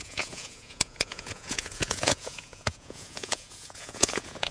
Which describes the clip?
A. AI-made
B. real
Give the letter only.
A